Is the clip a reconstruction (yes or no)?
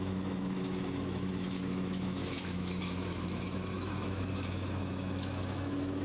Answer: yes